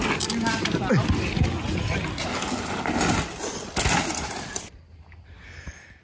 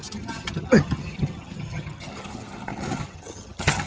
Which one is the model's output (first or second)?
second